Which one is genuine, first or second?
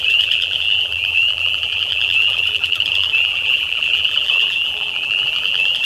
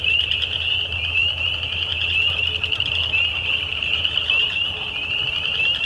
second